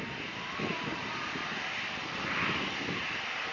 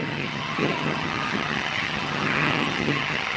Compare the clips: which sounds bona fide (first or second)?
first